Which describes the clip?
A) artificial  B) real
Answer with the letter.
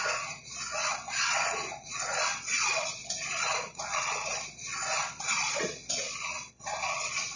A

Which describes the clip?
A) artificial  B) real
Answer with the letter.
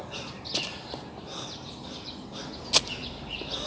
B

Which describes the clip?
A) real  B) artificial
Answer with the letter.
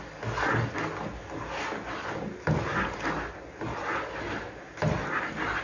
A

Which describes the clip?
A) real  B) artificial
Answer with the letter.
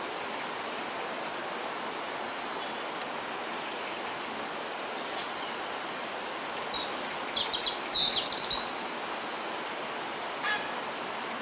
A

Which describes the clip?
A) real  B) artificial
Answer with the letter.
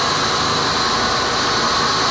A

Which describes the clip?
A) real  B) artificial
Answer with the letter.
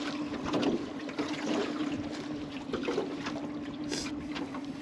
A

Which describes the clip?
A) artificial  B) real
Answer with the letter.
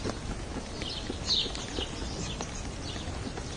B